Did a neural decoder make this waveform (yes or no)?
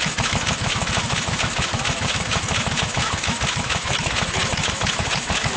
yes